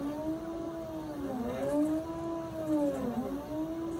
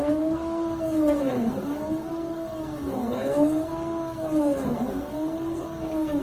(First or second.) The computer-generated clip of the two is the second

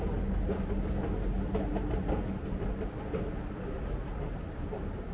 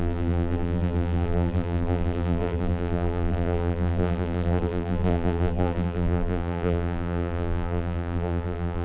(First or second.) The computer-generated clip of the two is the second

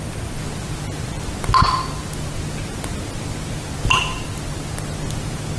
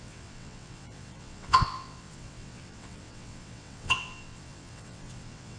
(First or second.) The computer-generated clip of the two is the second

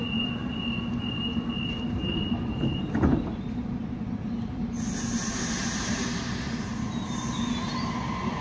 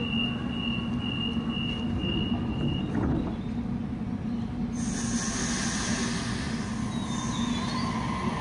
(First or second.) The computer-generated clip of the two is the first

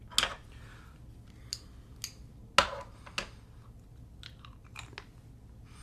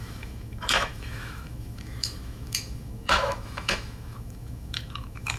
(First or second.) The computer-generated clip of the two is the second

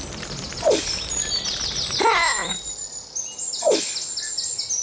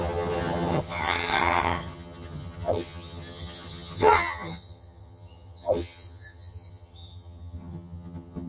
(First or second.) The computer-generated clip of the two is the second